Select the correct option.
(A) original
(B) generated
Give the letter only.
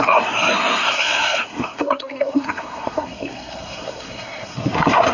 B